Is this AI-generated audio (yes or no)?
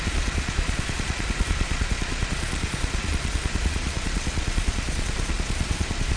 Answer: yes